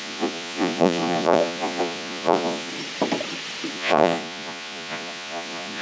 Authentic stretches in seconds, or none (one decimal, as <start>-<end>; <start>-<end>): 2.7-3.7